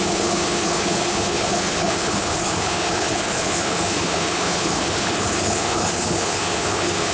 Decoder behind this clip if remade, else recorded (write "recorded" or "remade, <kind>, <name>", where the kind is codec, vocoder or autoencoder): remade, codec, HILCodec